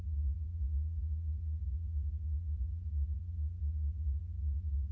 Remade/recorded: remade